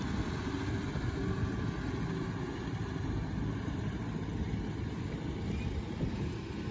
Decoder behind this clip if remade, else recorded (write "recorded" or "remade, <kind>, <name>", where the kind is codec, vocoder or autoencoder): recorded